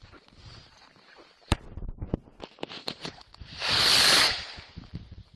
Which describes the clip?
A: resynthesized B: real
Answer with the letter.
A